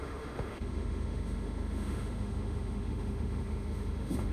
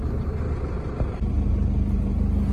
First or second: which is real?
second